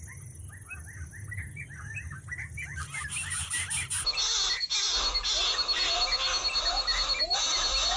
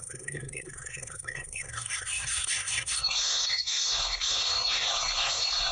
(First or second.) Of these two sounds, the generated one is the second